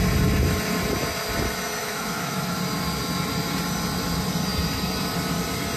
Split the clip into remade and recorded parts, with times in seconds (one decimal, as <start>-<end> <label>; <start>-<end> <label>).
0.0-1.8 recorded; 1.8-2.6 remade; 2.6-5.8 recorded